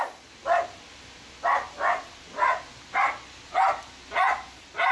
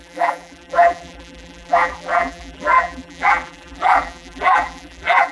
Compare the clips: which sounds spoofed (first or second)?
second